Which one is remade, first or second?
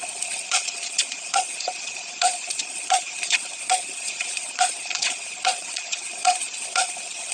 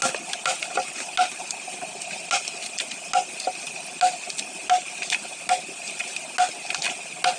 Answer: first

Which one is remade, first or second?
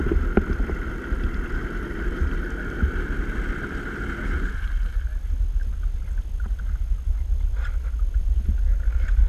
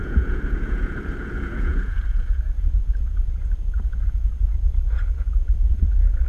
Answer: second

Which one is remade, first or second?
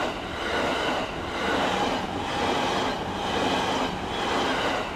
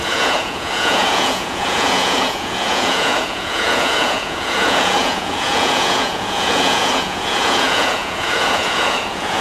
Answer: second